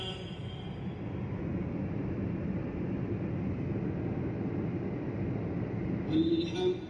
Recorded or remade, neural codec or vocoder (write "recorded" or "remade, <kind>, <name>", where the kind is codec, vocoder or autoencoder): recorded